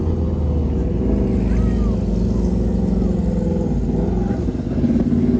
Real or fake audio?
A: real